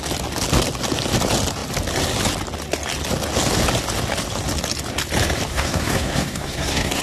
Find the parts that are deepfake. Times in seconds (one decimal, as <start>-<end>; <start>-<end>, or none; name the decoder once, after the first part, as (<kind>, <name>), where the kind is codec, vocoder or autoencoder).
5.5-7.0 (codec, SNAC)

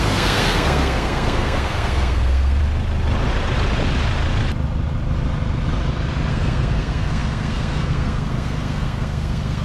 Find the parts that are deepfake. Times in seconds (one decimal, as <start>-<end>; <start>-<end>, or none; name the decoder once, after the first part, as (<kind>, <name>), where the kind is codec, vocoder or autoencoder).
0.0-2.6 (codec, SNAC); 6.3-9.6

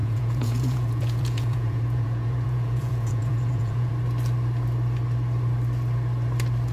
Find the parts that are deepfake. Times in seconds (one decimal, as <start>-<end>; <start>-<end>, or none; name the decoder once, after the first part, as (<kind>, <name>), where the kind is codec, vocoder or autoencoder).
0.0-3.9 (vocoder, Vocos)

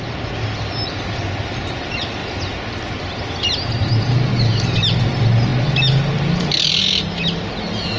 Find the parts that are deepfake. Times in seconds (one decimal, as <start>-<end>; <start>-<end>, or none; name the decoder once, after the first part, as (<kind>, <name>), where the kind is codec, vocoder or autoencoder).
none

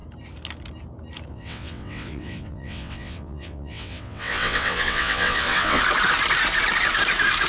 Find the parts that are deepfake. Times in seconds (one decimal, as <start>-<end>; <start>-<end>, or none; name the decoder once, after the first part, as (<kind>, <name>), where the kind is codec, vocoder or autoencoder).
1.3-5.8 (vocoder, WaveNeXt)

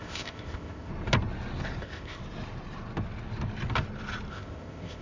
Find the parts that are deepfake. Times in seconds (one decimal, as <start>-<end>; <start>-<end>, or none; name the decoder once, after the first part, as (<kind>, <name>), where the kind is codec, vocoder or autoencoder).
0.0-0.9 (codec, ZipCodec); 1.8-2.2; 4.3-5.0

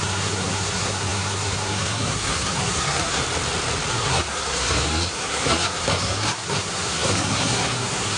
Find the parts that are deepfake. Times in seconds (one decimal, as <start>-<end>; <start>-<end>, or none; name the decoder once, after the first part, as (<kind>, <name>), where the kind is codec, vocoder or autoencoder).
0.0-3.2 (codec, SNAC); 3.9-8.2